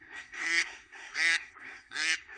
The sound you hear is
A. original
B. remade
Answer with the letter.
B